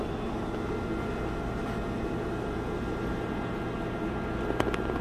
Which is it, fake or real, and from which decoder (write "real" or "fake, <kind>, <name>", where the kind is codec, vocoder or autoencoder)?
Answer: real